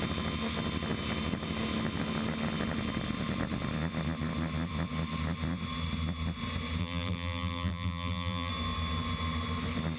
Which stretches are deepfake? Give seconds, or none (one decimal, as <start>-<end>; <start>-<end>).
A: 6.8-8.5